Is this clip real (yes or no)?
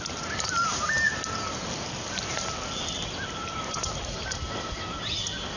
yes